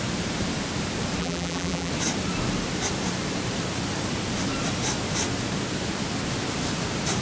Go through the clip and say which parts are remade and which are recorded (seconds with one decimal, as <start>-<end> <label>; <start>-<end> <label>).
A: 0.0-1.2 recorded; 1.2-1.9 remade; 1.9-7.2 recorded